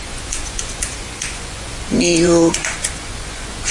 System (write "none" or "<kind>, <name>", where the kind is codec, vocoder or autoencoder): vocoder, Vocos